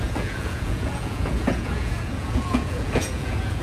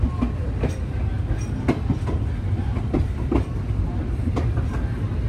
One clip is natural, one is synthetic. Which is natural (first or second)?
second